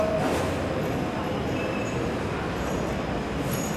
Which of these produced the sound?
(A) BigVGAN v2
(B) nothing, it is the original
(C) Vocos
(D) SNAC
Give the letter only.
B